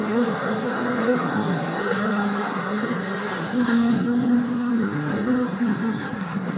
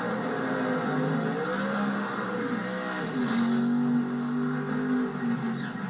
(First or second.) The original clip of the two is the second